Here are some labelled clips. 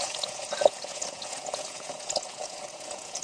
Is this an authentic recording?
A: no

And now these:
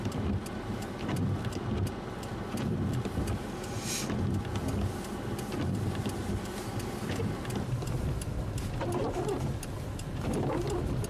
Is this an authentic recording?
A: yes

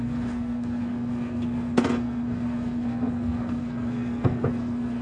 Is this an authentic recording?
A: no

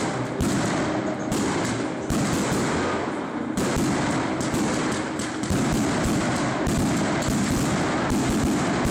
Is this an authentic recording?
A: yes